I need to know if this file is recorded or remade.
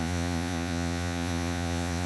remade